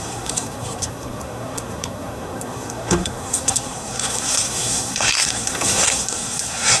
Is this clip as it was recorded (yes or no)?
no